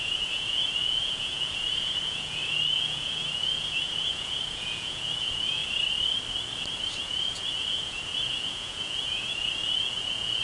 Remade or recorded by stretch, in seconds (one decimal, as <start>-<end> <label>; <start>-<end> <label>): 0.0-5.6 remade; 5.6-7.0 recorded; 7.0-10.4 remade